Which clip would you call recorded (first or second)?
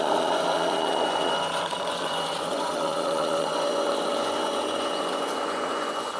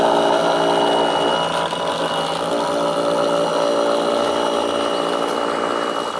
second